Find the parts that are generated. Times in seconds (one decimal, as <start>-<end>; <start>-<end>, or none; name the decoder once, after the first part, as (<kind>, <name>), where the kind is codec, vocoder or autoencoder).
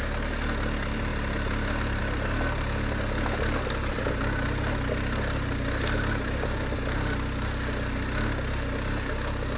none